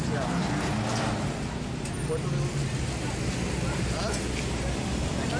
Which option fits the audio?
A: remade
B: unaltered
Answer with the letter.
B